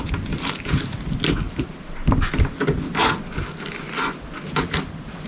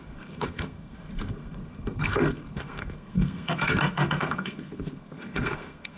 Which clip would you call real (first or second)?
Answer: first